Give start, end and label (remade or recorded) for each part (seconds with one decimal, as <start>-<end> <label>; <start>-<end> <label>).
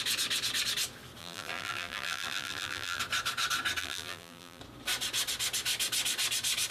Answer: 0.0-1.2 recorded; 1.2-3.0 remade; 3.0-3.8 recorded; 3.8-4.6 remade; 4.6-6.7 recorded